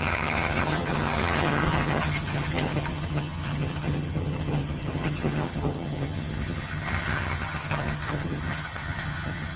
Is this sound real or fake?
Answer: fake